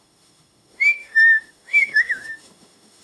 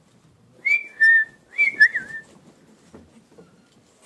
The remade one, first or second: first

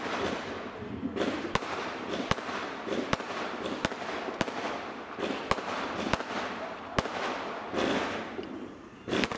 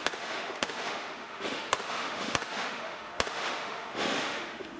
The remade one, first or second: second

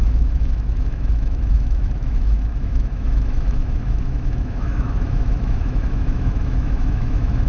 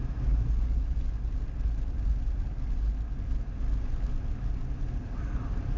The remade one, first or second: first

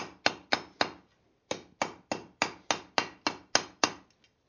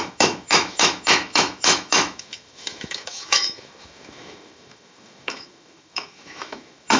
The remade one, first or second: second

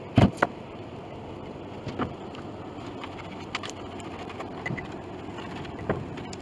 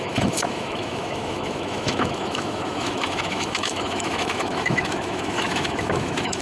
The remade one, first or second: second